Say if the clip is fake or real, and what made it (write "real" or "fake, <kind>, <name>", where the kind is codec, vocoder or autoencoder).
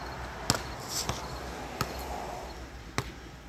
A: real